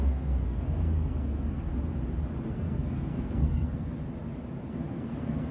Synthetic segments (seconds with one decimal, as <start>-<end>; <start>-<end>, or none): 0.0-1.7; 2.5-4.0; 4.7-5.5